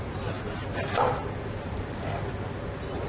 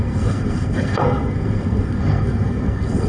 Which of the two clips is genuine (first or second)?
first